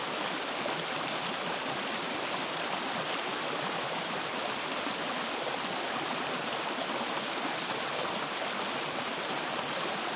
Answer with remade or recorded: recorded